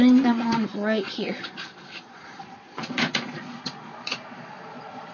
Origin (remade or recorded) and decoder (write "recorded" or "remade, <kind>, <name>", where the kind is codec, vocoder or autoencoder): remade, vocoder, Vocos